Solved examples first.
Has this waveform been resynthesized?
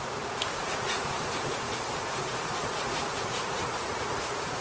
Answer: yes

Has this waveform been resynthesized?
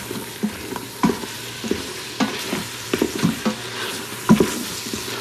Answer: no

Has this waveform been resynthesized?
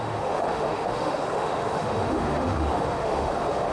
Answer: yes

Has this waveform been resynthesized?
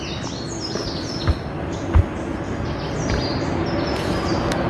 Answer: no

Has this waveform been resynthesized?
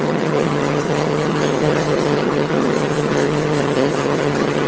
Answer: yes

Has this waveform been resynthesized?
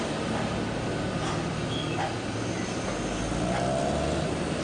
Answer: no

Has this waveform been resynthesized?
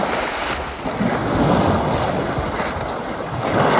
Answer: no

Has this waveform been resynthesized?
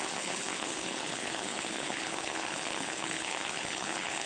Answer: yes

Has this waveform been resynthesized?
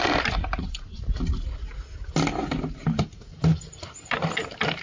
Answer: no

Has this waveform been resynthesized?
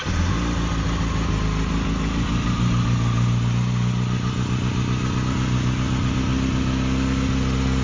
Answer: no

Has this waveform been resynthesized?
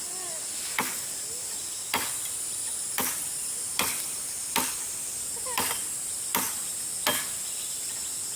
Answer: no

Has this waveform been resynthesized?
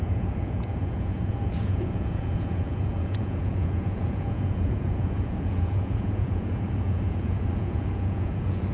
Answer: yes